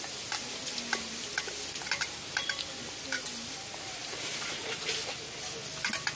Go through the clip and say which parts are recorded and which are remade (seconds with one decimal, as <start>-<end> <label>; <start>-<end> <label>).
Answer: 0.0-4.0 recorded; 4.0-4.9 remade; 4.9-6.2 recorded